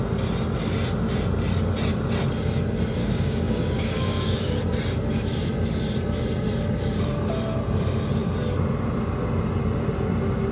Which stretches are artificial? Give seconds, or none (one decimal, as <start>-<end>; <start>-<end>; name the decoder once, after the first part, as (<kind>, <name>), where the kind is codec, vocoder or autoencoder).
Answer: 3.0-4.5 (codec, DAC)